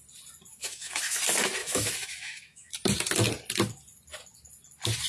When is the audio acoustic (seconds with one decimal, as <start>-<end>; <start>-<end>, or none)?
0.0-0.5; 1.2-1.6; 2.7-5.1